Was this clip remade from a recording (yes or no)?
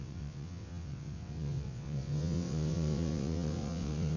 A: yes